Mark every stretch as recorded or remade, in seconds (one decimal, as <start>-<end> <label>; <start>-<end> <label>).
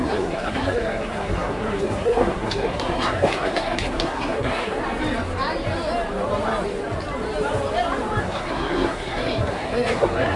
0.0-4.8 remade; 4.8-8.2 recorded; 8.2-10.4 remade